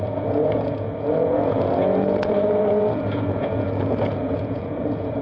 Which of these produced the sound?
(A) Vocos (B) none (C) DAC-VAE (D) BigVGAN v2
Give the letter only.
A